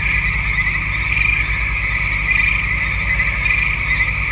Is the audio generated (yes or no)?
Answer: no